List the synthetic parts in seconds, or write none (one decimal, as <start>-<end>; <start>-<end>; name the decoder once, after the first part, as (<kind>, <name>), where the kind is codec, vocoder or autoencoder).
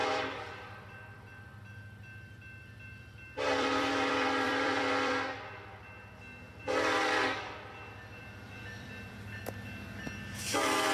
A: 0.0-5.1 (vocoder, BigVGAN v2); 8.2-9.4